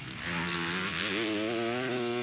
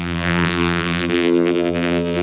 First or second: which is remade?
second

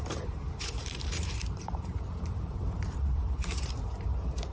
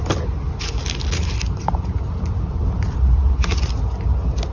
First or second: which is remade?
first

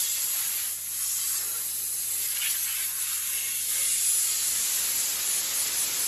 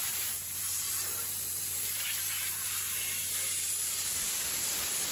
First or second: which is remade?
second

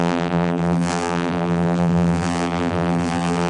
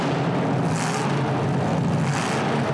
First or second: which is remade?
first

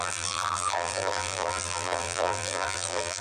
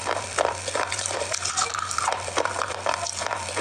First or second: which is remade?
first